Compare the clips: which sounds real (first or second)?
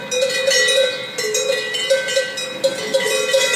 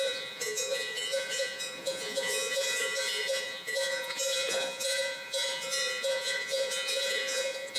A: first